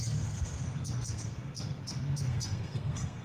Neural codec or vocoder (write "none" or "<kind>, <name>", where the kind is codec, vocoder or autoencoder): codec, SNAC